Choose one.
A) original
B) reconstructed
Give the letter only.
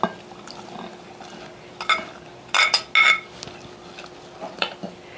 A